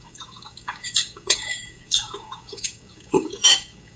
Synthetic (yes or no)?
yes